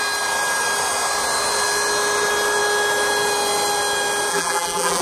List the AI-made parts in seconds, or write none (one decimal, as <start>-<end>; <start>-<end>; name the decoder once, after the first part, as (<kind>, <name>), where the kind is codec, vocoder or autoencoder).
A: 4.3-5.0 (vocoder, BigVGAN v2)